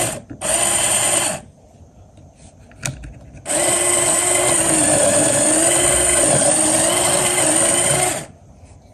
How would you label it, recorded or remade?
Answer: recorded